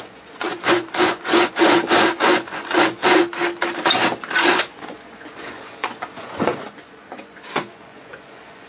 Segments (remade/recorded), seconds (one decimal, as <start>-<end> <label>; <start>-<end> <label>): 0.0-3.2 remade; 3.2-4.5 recorded; 4.5-8.7 remade